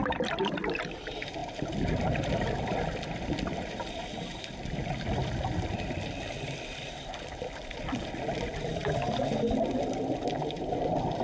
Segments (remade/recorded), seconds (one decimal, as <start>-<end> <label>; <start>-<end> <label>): 0.0-8.8 remade; 8.8-9.8 recorded; 9.8-11.2 remade